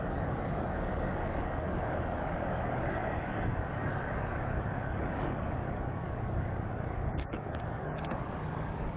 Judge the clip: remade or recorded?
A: remade